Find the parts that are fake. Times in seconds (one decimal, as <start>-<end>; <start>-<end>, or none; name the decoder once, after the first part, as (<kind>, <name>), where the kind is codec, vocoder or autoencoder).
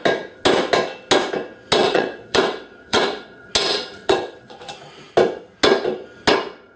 1.8-3.5 (vocoder, WaveNeXt); 4.0-4.7